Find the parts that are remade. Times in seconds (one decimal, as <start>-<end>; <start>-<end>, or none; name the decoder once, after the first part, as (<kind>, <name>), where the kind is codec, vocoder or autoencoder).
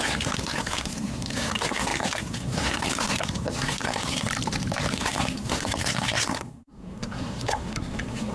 0.0-4.3 (codec, SNAC); 4.9-8.3